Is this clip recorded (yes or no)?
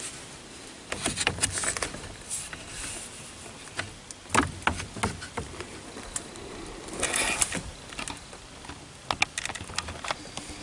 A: yes